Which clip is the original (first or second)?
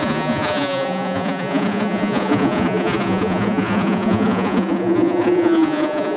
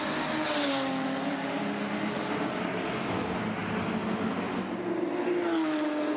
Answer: second